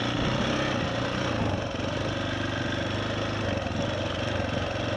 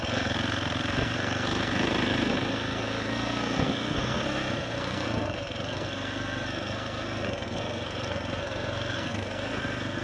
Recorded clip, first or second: first